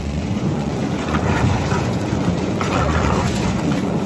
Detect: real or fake fake